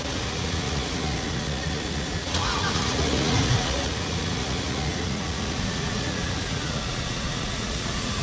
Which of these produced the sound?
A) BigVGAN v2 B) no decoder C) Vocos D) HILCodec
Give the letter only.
C